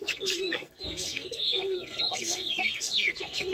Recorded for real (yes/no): no